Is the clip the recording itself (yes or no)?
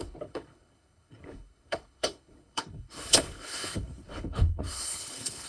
no